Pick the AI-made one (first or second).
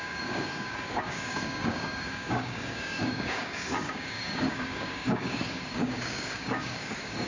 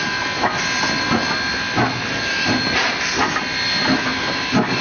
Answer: first